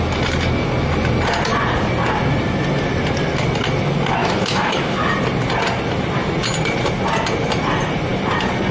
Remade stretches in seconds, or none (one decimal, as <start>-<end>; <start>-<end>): 4.2-5.1